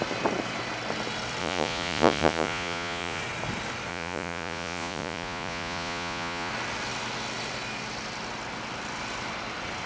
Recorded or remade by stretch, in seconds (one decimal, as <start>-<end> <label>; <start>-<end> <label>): 0.0-1.4 recorded; 1.4-3.2 remade; 3.2-3.9 recorded; 3.9-6.5 remade; 6.5-9.9 recorded